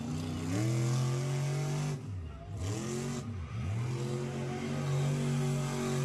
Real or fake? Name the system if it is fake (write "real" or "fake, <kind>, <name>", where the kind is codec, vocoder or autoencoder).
real